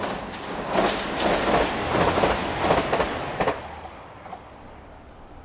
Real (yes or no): yes